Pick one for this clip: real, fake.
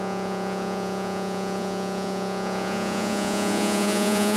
fake